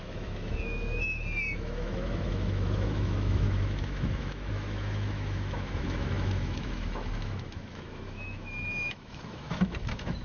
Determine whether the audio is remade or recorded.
remade